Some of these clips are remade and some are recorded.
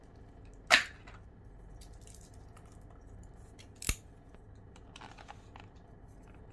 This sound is recorded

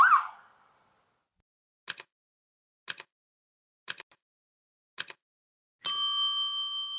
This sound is recorded